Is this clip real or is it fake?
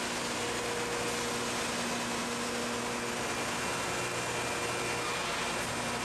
real